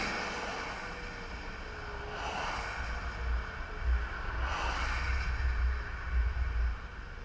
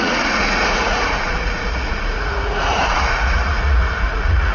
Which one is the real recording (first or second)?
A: first